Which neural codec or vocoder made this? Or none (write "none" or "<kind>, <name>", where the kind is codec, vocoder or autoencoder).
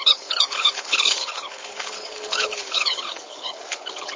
codec, HILCodec